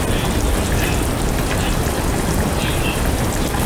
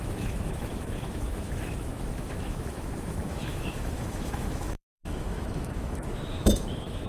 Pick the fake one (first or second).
second